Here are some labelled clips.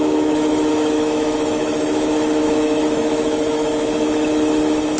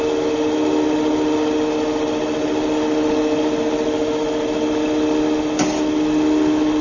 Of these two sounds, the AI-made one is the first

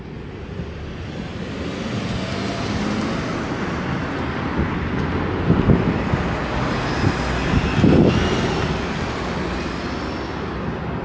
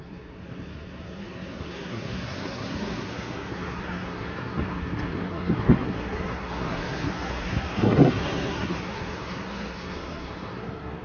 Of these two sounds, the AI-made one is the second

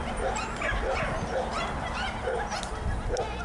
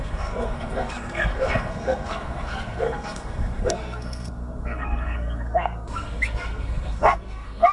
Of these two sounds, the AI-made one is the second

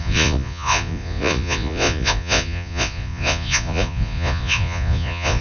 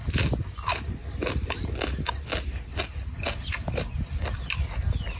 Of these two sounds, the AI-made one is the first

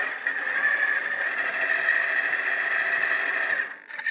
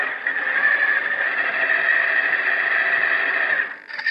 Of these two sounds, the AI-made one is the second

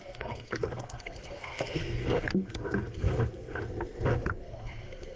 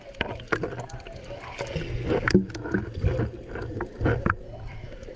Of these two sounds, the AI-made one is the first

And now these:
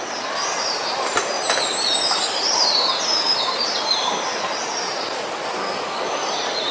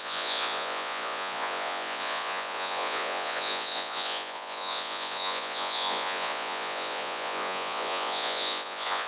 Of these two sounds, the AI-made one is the second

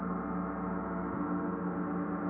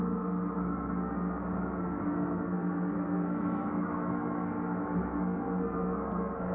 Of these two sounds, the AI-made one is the second